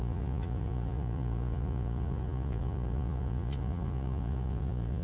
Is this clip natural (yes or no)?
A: no